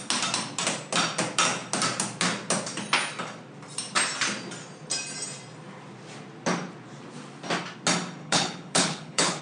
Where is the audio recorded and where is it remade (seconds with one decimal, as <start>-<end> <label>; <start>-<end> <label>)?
0.0-8.2 recorded; 8.2-9.4 remade